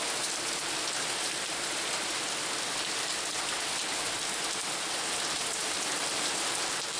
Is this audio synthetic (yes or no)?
no